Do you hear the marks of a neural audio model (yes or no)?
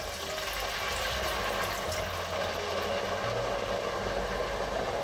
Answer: no